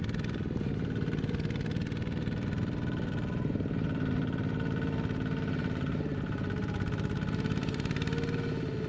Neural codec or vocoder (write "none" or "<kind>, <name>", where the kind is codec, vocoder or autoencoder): vocoder, BigVGAN v2